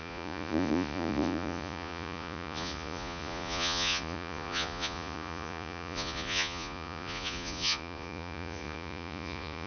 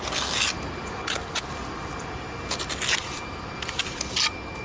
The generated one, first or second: first